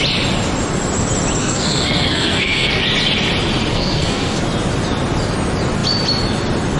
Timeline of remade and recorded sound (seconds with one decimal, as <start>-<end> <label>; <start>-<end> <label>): 0.0-1.4 recorded; 1.4-2.8 remade; 2.8-3.7 recorded; 3.7-4.4 remade; 4.4-6.8 recorded